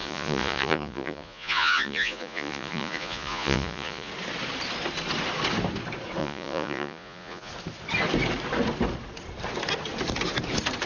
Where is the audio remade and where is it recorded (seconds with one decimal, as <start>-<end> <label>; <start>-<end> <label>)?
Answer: 0.0-4.1 remade; 4.1-6.2 recorded; 6.2-7.5 remade; 7.5-10.9 recorded